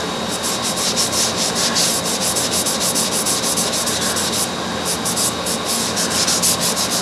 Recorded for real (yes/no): yes